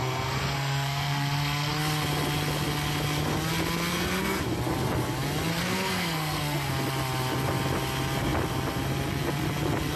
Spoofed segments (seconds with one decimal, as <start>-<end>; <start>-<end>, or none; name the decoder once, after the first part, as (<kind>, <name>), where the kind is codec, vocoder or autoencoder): 0.0-1.7 (codec, SNAC); 3.9-4.4; 5.5-6.7